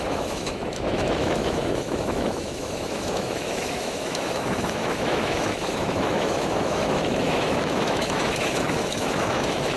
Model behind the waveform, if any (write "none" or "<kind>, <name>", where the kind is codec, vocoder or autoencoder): autoencoder, DAC-VAE